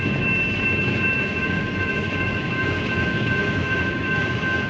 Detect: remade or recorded remade